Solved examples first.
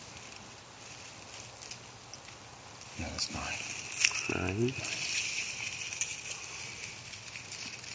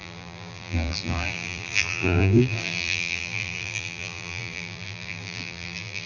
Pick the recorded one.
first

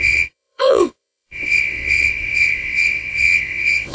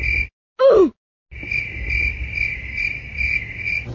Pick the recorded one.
second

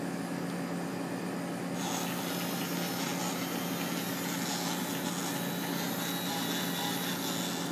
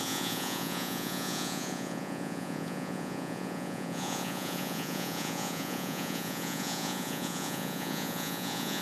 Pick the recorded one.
first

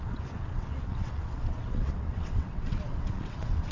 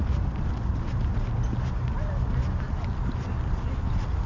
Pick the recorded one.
second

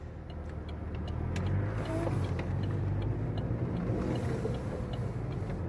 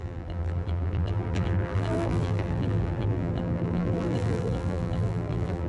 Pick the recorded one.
first